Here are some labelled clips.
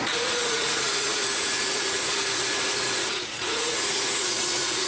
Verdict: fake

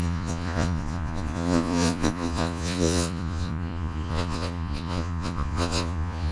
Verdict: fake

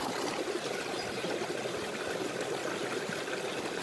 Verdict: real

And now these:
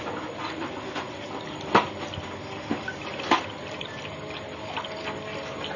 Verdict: real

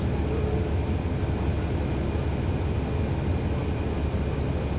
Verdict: real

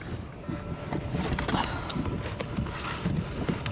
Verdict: real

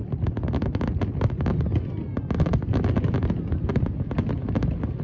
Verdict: real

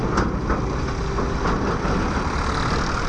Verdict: real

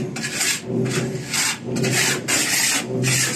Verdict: real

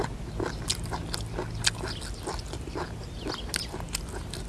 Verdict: real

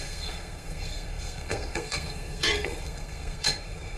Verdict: fake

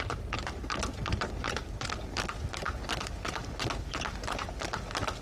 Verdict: real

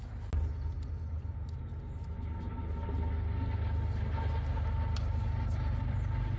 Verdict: real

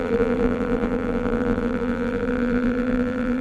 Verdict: fake